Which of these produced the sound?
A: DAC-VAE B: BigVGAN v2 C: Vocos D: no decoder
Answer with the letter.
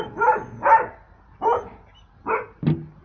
D